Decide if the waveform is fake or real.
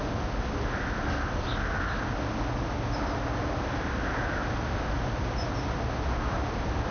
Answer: real